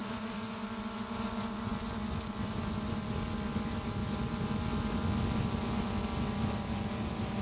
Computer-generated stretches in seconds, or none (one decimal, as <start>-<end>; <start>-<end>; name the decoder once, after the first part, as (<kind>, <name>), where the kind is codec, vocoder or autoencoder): 0.0-0.6 (vocoder, Vocos)